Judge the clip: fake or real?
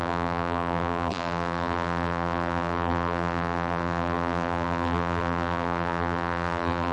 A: fake